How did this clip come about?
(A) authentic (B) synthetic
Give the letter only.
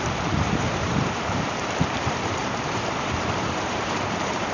B